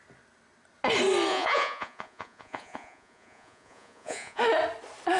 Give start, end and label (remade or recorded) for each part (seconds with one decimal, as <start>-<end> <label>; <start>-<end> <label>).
0.0-1.3 recorded; 1.3-4.4 remade; 4.4-5.2 recorded

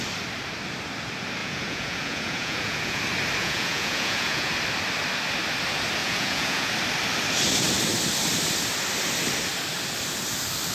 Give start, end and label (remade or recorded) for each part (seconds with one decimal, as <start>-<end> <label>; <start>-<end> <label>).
0.0-1.4 recorded; 1.4-3.0 remade; 3.0-3.4 recorded; 3.4-4.5 remade; 4.5-6.0 recorded; 6.0-6.7 remade; 6.7-10.7 recorded

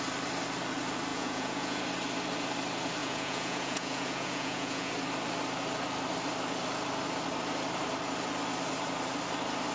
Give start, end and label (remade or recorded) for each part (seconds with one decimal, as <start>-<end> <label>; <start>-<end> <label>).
0.0-1.1 recorded; 1.1-1.8 remade; 1.8-3.0 recorded; 3.0-4.9 remade; 4.9-9.7 recorded

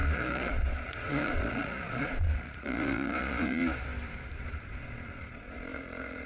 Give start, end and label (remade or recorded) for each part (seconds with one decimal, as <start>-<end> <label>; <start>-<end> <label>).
0.0-3.6 remade; 3.6-4.4 recorded; 4.4-6.3 remade

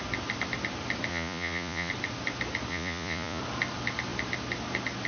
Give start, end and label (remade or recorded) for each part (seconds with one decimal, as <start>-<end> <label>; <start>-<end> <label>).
0.0-1.1 recorded; 1.1-1.9 remade; 1.9-2.7 recorded; 2.7-3.4 remade; 3.4-5.1 recorded

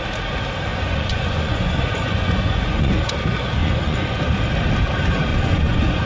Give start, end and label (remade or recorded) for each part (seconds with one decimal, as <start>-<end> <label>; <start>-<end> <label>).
0.0-0.7 recorded; 0.7-3.1 remade; 3.1-3.6 recorded; 3.6-4.2 remade; 4.2-5.3 recorded; 5.3-6.1 remade

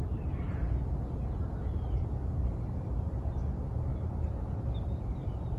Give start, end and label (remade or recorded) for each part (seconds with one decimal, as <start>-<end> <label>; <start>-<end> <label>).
0.0-5.6 recorded

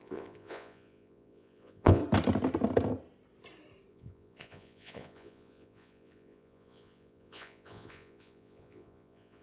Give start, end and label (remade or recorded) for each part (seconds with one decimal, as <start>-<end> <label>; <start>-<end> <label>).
0.0-2.0 remade; 2.0-3.9 recorded; 3.9-9.4 remade